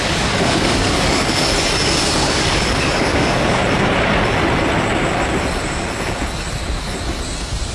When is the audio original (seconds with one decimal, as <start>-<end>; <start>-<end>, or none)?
1.5-2.2; 3.6-7.7